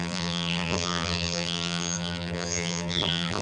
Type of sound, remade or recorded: remade